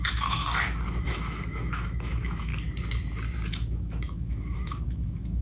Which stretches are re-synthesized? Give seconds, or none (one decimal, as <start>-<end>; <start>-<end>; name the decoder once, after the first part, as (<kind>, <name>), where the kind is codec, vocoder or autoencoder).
0.0-0.4 (autoencoder, DAC-VAE); 1.0-2.5; 3.5-5.4